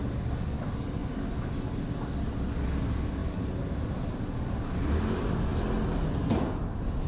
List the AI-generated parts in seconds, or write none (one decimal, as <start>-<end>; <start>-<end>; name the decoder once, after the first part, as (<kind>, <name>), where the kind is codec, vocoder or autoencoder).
none